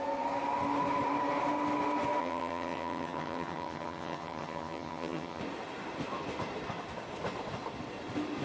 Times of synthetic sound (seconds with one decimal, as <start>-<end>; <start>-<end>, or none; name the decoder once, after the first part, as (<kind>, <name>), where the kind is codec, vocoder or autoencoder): 2.2-5.4 (vocoder, HiFi-GAN)

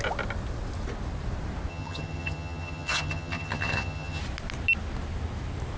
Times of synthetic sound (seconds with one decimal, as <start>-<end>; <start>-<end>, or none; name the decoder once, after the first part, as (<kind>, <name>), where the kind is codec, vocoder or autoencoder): 1.7-4.2 (vocoder, HiFi-GAN)